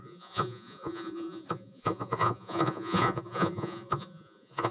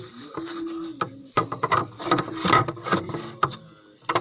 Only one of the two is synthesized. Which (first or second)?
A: first